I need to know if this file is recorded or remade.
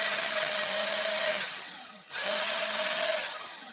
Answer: remade